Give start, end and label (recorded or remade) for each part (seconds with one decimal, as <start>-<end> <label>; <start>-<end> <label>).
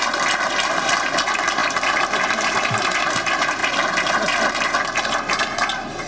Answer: 0.0-1.6 recorded; 1.6-3.0 remade; 3.0-6.1 recorded